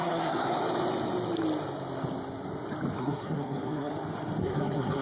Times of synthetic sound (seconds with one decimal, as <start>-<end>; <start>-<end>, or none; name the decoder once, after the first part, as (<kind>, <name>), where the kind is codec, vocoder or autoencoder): 0.0-0.6 (codec, SNAC); 3.0-3.9; 4.4-5.0